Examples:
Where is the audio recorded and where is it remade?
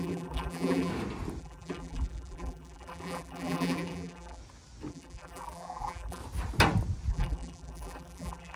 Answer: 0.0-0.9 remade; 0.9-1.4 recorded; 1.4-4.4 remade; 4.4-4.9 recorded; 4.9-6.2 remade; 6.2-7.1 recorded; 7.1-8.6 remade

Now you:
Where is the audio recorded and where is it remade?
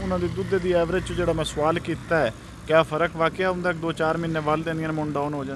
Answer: 0.0-5.6 recorded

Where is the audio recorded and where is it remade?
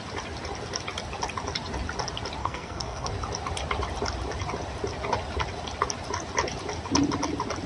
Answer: 0.0-2.4 recorded; 2.4-3.1 remade; 3.1-7.7 recorded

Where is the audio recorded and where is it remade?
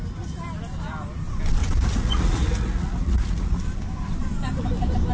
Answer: 0.0-1.6 recorded; 1.6-3.6 remade; 3.6-5.1 recorded